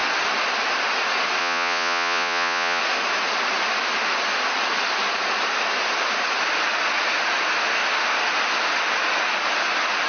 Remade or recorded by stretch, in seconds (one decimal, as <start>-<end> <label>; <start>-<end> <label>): 0.0-1.4 recorded; 1.4-2.8 remade; 2.8-10.1 recorded